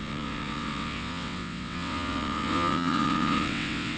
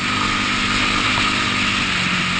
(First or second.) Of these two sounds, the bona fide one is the second